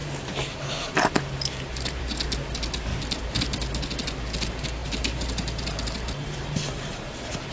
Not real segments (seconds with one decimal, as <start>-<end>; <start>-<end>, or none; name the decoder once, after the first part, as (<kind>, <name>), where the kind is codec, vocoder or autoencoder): 2.9-3.4 (vocoder, BigVGAN v2); 4.8-7.1